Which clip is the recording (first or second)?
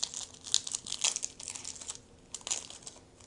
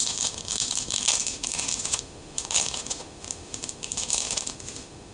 first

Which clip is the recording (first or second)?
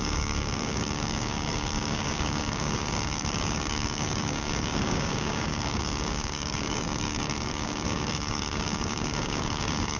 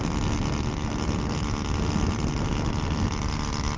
second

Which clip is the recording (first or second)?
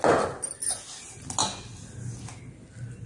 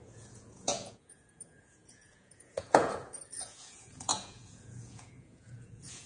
first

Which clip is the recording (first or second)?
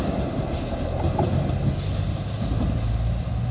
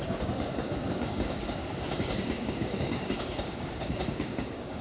first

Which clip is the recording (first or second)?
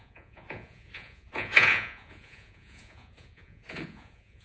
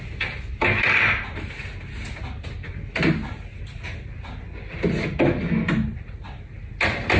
second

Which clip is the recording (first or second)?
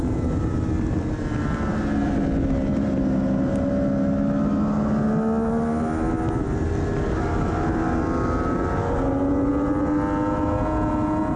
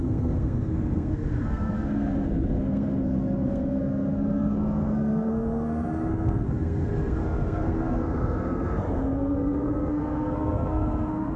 first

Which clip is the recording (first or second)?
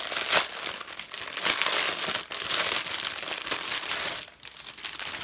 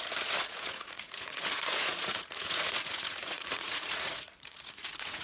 first